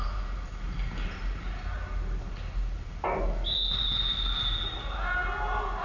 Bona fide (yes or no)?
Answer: yes